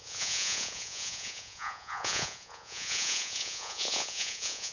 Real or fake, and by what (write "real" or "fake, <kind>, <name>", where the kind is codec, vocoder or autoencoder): fake, vocoder, Vocos